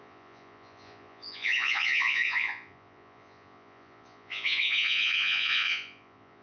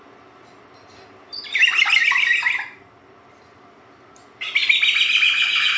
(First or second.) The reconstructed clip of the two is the first